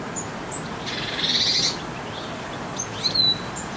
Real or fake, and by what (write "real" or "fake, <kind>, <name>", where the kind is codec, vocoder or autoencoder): real